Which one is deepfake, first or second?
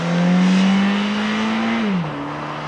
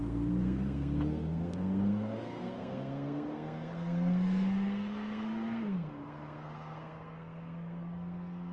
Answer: second